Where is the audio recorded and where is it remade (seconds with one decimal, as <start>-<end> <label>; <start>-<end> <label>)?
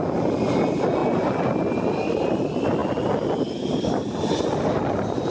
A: 0.0-5.3 recorded